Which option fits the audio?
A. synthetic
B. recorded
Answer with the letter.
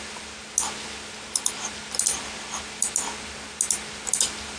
B